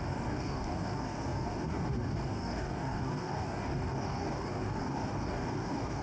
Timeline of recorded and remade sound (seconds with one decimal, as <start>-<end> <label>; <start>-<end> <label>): 0.0-6.0 remade